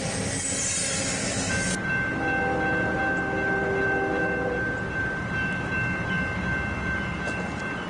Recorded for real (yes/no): yes